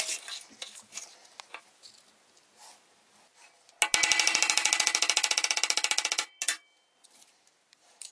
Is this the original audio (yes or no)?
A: yes